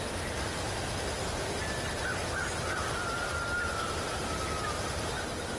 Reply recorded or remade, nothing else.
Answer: recorded